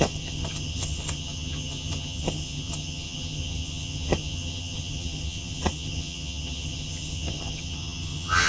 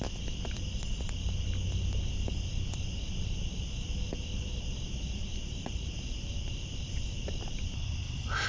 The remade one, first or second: first